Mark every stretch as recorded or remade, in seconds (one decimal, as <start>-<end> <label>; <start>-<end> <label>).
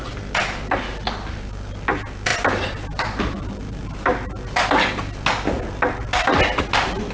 0.0-7.1 recorded